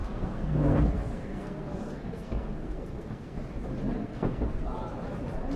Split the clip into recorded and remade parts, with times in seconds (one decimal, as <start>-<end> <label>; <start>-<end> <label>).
0.0-3.4 remade; 3.4-4.0 recorded; 4.0-4.6 remade; 4.6-5.6 recorded